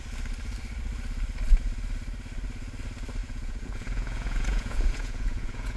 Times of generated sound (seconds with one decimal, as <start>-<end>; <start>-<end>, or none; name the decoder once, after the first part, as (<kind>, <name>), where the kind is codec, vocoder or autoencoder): 3.2-5.8 (vocoder, Vocos)